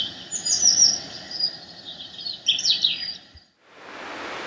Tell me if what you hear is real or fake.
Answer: real